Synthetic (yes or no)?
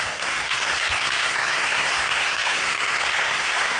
yes